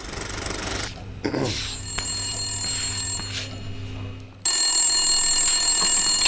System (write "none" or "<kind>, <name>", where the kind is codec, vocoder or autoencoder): none